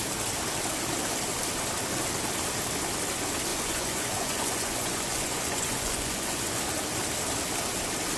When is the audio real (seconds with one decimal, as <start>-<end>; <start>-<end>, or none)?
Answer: 0.0-3.5; 6.6-8.2